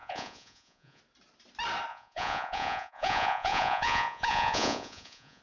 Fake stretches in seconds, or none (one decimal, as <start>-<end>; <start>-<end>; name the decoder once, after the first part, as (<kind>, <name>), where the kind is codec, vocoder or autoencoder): 0.0-1.0 (vocoder, Vocos); 1.9-5.4